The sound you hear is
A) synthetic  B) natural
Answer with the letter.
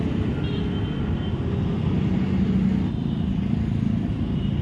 B